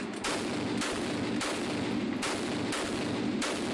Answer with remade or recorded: recorded